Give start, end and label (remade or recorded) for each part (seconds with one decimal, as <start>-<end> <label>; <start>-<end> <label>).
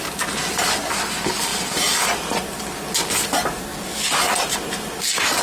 0.0-5.4 recorded